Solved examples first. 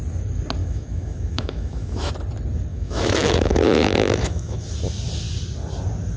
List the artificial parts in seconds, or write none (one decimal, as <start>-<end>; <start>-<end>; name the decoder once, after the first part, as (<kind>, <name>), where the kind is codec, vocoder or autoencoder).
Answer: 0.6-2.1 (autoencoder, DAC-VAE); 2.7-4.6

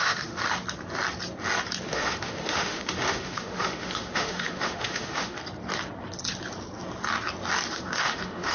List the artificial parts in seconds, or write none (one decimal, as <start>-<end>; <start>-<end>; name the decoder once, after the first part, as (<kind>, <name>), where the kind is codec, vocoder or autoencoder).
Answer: 0.0-0.4 (autoencoder, DAC-VAE); 1.9-5.4; 7.7-8.5

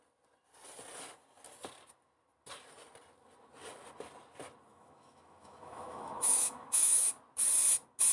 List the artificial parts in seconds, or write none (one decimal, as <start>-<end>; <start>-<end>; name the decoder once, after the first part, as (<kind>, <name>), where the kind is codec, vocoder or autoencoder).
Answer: 4.7-7.1 (autoencoder, DAC-VAE)

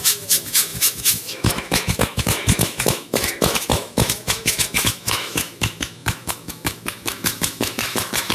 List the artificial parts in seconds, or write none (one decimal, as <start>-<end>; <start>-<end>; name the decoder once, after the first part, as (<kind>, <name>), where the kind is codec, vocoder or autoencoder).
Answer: 0.0-8.3 (autoencoder, DAC-VAE)

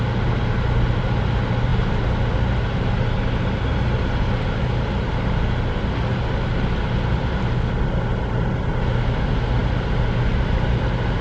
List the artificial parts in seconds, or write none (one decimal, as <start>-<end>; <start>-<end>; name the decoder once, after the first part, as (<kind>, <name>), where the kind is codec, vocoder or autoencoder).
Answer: none

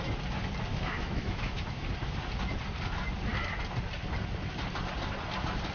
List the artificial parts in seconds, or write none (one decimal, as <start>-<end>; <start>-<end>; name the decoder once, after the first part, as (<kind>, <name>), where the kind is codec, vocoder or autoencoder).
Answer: 0.7-1.9 (autoencoder, DAC-VAE)